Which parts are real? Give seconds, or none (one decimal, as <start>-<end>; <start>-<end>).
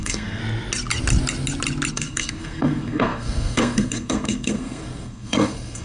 0.4-1.9